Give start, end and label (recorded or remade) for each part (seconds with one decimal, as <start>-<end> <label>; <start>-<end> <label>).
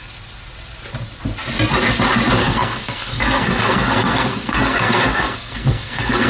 0.0-2.4 recorded; 2.4-6.3 remade